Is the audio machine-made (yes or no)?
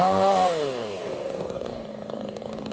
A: yes